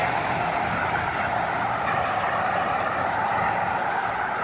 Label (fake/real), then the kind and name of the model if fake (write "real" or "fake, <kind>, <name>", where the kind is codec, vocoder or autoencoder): real